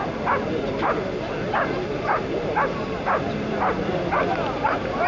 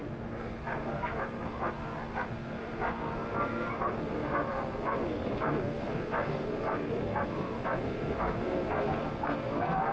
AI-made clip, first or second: second